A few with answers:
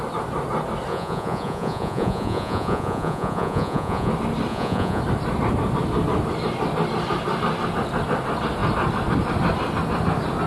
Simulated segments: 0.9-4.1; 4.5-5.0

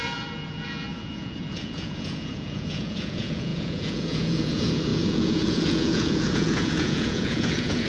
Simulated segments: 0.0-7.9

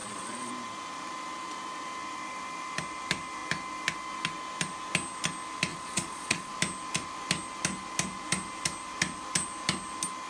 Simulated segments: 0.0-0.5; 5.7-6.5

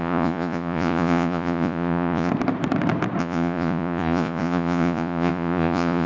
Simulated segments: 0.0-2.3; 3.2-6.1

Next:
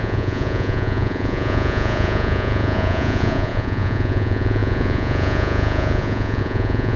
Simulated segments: 0.0-7.0

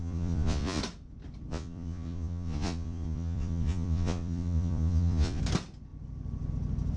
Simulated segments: 0.0-0.8; 1.5-5.4